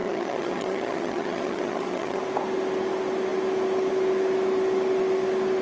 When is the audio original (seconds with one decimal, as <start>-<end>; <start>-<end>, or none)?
2.2-5.6